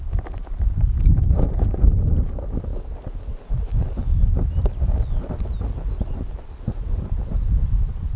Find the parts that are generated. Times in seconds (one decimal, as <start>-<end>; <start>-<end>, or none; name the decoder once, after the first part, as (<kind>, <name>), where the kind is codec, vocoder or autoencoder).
none